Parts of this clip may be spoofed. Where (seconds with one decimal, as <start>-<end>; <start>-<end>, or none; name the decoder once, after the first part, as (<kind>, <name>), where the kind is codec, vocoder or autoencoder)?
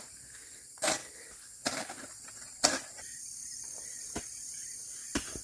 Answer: none